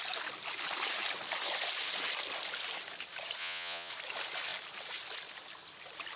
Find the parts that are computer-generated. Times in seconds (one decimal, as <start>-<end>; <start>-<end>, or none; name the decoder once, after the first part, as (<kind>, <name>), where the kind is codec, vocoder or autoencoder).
3.4-3.9 (vocoder, Vocos)